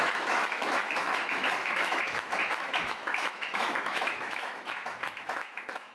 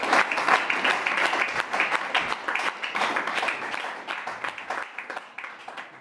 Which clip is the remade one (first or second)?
first